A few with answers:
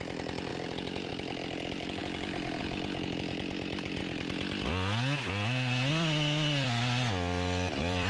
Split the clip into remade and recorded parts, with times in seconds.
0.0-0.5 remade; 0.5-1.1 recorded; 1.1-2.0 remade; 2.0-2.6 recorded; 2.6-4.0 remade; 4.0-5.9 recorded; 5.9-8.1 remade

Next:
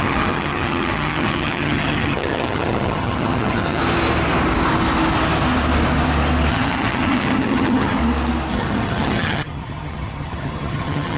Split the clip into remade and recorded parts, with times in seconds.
0.0-3.8 remade; 3.8-6.5 recorded; 6.5-8.0 remade; 8.0-8.5 recorded; 8.5-11.2 remade

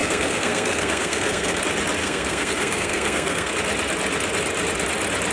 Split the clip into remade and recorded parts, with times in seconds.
0.0-1.6 remade; 1.6-2.0 recorded; 2.0-3.5 remade; 3.5-5.3 recorded